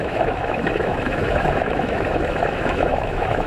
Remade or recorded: remade